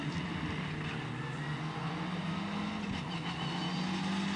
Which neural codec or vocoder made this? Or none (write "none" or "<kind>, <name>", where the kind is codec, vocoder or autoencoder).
none